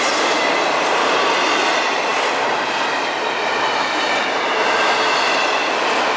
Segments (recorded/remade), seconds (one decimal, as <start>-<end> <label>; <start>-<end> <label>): 0.0-6.2 recorded